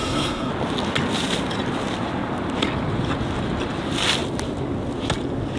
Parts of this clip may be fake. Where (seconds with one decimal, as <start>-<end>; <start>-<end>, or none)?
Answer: 0.0-0.5